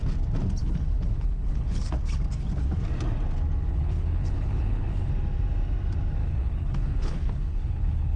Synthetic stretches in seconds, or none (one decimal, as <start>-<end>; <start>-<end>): 0.6-1.9; 3.7-5.1; 6.2-8.2